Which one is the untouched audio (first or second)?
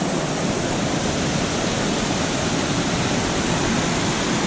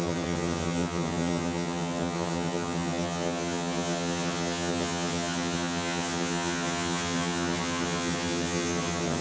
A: first